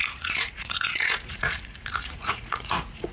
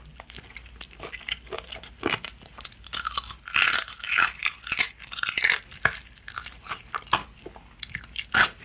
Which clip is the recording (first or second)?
second